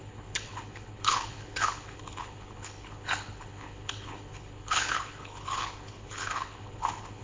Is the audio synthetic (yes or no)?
yes